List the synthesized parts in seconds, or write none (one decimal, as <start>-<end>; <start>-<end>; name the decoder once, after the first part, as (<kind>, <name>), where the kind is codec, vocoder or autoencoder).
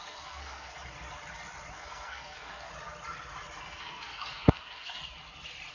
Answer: 0.0-0.8 (codec, SNAC); 1.7-2.7; 3.6-5.0